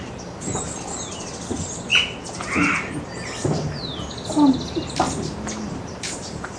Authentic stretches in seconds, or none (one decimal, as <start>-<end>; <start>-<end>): 1.9-3.0